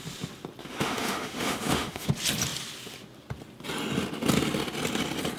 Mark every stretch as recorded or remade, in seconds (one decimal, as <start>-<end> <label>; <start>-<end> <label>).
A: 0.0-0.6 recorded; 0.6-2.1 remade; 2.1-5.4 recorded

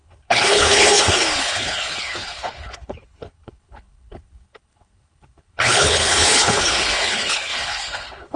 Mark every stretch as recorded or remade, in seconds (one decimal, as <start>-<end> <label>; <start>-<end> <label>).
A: 0.0-8.4 remade

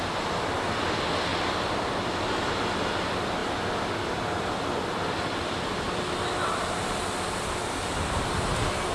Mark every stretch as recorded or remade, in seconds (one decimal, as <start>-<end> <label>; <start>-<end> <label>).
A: 0.0-8.9 recorded